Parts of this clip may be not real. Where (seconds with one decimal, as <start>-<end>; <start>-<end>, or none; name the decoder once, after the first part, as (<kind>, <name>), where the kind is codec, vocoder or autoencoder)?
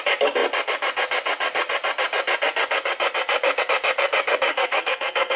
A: 4.5-5.4 (codec, SNAC)